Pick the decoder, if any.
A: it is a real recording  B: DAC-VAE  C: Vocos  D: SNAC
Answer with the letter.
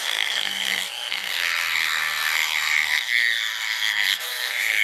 D